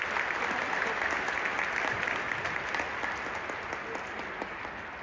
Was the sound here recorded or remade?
recorded